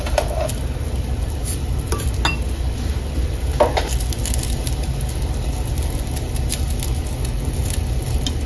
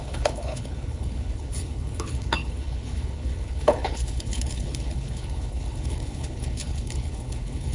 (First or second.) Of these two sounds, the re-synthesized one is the second